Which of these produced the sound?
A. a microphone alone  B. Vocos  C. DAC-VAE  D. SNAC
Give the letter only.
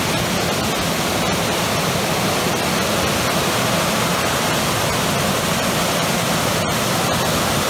A